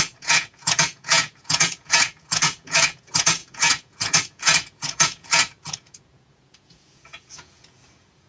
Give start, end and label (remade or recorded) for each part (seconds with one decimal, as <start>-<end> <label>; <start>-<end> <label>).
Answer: 0.0-8.3 remade